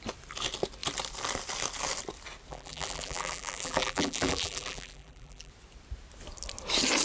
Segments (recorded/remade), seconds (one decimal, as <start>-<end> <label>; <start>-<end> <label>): 0.0-2.5 recorded; 2.5-5.5 remade; 5.5-7.0 recorded